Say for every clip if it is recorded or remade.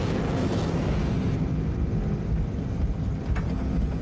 recorded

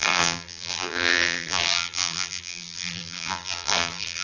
remade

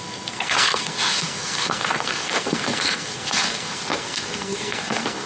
remade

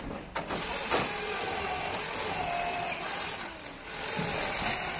recorded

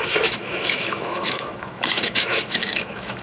remade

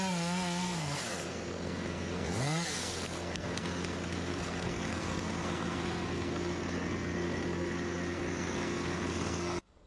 remade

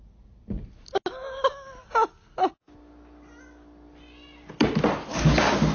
recorded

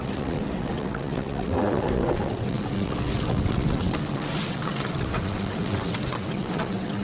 remade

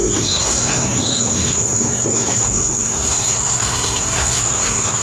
remade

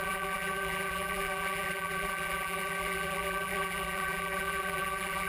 remade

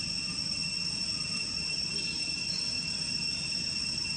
recorded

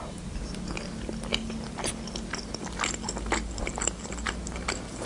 recorded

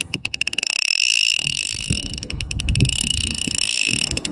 remade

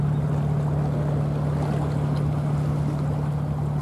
recorded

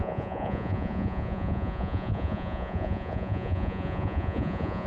remade